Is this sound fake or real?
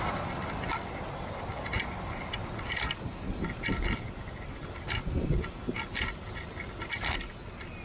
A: real